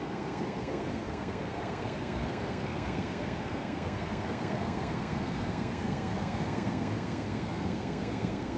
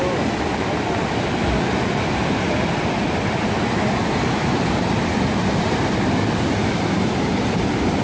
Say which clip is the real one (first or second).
second